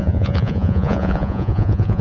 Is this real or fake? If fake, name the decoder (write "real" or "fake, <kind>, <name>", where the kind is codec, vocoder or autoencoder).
fake, vocoder, Vocos